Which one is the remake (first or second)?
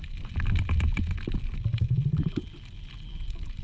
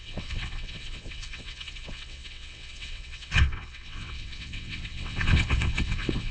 second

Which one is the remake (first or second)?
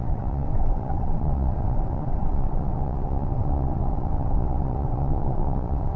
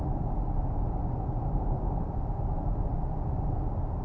first